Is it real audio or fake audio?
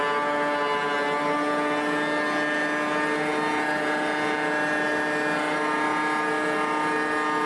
real